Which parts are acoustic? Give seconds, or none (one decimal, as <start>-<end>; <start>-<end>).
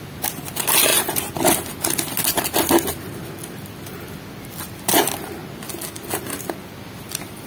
0.0-7.5